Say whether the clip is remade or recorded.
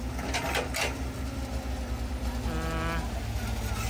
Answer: recorded